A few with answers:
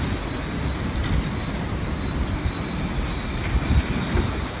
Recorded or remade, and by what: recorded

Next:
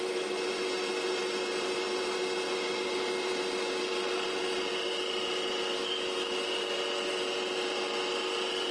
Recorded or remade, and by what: recorded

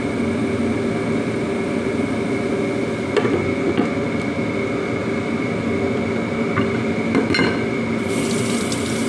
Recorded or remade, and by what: recorded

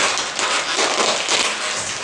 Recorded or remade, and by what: recorded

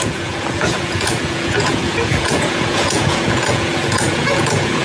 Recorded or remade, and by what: remade, vocoder, Vocos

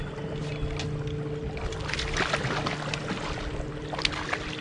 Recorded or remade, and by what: recorded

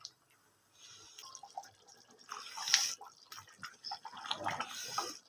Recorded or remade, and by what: remade, vocoder, BigVGAN v2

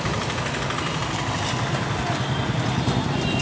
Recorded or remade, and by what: recorded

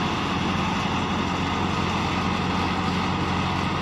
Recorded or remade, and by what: recorded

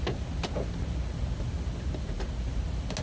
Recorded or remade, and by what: recorded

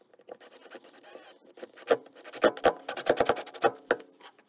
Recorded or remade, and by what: recorded